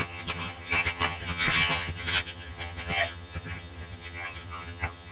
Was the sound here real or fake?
fake